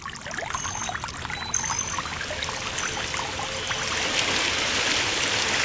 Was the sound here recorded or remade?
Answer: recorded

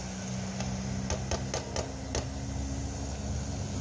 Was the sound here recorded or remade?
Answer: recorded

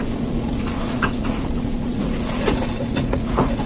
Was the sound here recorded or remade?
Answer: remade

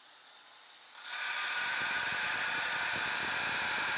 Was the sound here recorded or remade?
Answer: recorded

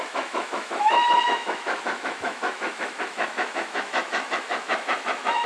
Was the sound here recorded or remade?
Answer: remade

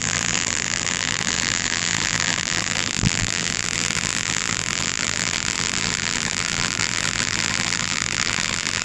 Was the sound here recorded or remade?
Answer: remade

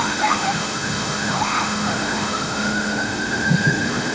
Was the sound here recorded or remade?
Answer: remade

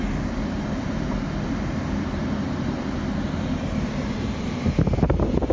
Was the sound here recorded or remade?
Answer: recorded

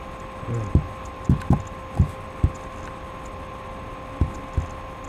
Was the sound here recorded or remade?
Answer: recorded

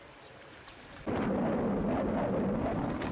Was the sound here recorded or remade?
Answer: recorded